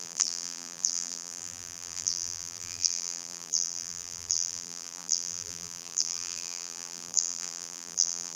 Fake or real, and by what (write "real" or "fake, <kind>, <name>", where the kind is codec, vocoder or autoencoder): fake, vocoder, BigVGAN v2